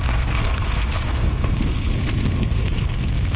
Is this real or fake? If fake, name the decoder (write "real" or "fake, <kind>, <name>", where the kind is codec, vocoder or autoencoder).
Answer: fake, codec, SNAC